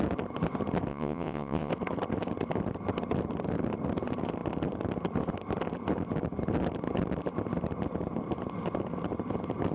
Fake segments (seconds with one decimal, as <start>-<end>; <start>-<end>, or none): 0.9-1.7